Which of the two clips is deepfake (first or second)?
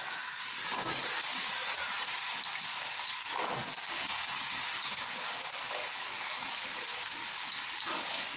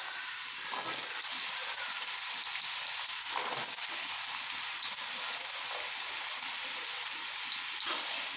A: first